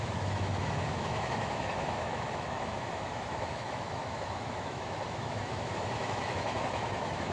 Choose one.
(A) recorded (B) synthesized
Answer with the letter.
B